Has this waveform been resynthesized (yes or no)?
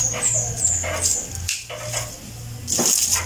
no